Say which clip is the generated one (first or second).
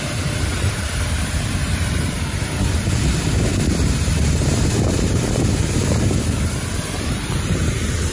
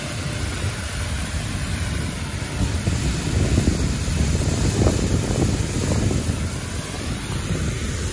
first